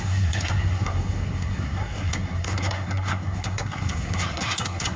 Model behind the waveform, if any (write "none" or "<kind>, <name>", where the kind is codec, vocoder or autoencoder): codec, SNAC